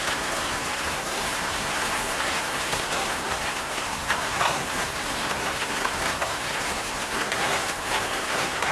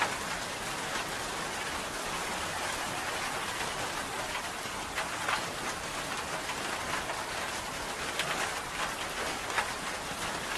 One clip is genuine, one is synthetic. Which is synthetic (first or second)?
first